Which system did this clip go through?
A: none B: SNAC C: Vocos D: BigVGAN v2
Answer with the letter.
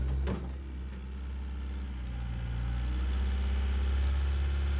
A